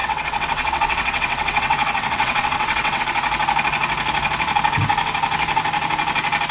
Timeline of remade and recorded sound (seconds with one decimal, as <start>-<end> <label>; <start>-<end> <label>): 0.0-3.0 remade; 3.0-6.5 recorded